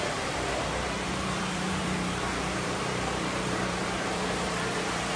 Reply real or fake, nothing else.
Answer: fake